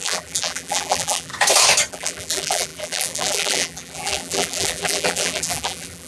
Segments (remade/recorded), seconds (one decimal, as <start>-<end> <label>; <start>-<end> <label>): 0.0-1.3 remade; 1.3-1.9 recorded; 1.9-6.1 remade